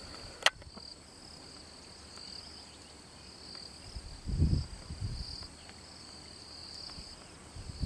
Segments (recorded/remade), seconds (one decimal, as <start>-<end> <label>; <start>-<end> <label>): 0.0-7.9 recorded